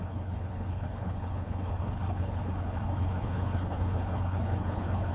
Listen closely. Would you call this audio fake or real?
fake